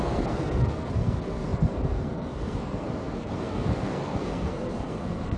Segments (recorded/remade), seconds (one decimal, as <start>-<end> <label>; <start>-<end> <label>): 0.0-5.4 remade